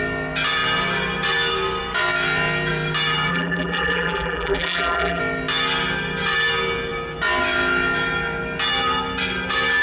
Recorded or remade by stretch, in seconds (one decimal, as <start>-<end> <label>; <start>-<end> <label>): 0.0-3.3 recorded; 3.3-5.2 remade; 5.2-9.8 recorded